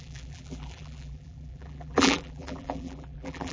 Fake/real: fake